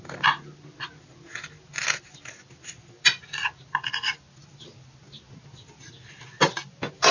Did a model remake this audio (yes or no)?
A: no